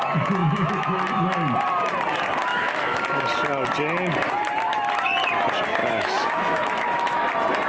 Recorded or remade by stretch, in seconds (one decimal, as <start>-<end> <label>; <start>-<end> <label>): 0.0-0.4 recorded; 0.4-0.9 remade; 0.9-2.5 recorded; 2.5-3.0 remade; 3.0-5.8 recorded; 5.8-7.3 remade; 7.3-7.7 recorded